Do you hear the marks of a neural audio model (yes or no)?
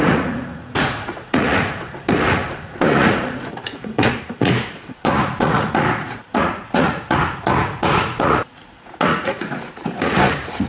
yes